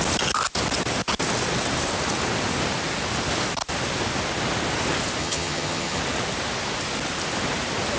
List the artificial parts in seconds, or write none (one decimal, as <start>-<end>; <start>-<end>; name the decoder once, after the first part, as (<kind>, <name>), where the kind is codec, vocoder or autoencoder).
5.2-6.0 (vocoder, HiFi-GAN)